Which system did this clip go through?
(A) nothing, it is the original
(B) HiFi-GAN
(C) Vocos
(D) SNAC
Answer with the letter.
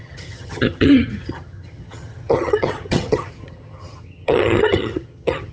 B